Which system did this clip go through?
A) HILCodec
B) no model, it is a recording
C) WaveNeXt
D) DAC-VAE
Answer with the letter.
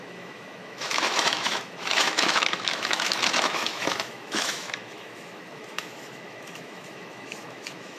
D